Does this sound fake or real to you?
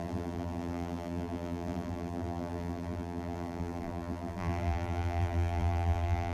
fake